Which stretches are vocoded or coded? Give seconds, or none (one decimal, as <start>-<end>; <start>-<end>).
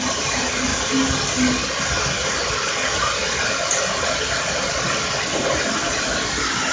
none